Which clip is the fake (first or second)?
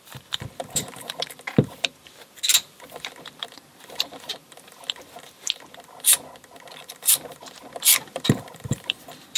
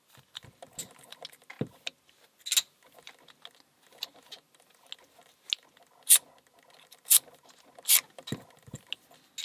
first